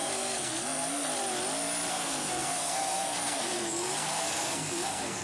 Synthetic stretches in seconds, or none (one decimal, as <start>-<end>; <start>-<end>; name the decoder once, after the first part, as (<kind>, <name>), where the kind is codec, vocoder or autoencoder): 0.0-1.1 (codec, SNAC); 1.9-5.2